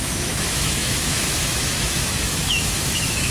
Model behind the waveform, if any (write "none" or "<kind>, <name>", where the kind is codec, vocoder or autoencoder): autoencoder, DAC-VAE